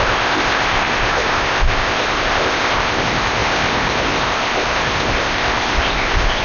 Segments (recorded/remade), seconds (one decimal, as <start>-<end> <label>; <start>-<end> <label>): 0.0-6.4 remade

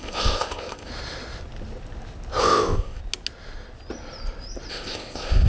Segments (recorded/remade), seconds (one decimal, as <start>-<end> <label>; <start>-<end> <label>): 0.0-0.9 remade; 0.9-2.4 recorded; 2.4-3.0 remade; 3.0-4.7 recorded; 4.7-5.5 remade

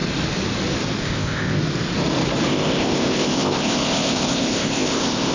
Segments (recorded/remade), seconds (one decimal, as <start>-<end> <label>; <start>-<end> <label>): 0.0-1.0 recorded; 1.0-1.6 remade; 1.6-2.5 recorded; 2.5-5.3 remade

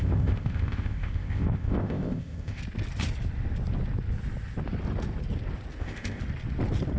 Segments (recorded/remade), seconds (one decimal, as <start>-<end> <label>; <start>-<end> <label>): 0.0-2.6 remade; 2.6-5.8 recorded; 5.8-6.2 remade; 6.2-7.0 recorded

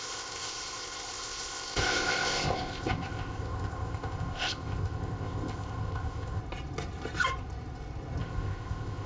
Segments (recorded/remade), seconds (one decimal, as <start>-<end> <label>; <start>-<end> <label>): 0.0-6.4 remade; 6.4-8.2 recorded; 8.2-9.1 remade

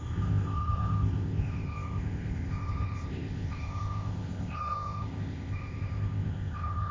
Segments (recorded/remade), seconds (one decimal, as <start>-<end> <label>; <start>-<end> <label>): 0.0-6.9 remade

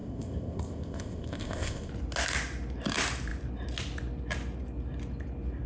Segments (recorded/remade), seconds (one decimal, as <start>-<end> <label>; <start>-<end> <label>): 0.0-1.9 remade; 1.9-5.7 recorded

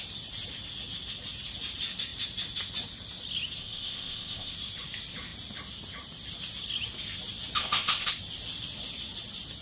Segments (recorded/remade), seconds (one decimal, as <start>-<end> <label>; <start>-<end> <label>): 0.0-3.6 recorded; 3.6-4.5 remade; 4.5-7.6 recorded; 7.6-8.1 remade; 8.1-9.6 recorded